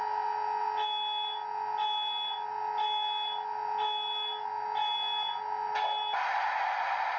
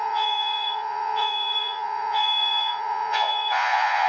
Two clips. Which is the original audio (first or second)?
first